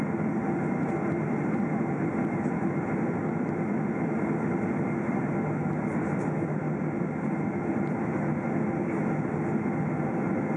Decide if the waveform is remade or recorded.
recorded